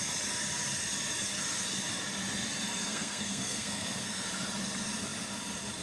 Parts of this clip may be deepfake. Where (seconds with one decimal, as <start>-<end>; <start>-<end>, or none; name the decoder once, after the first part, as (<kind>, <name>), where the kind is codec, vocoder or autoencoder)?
2.8-4.3 (codec, SNAC)